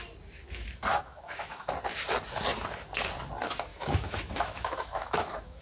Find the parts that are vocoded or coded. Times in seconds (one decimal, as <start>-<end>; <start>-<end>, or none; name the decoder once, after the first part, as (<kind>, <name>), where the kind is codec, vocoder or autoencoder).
0.9-1.7 (autoencoder, DAC-VAE); 3.7-5.6